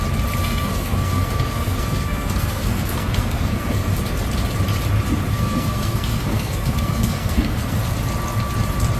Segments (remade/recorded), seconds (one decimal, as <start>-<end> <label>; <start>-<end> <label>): 0.0-0.4 recorded; 0.4-4.0 remade; 4.0-5.3 recorded; 5.3-7.8 remade; 7.8-9.0 recorded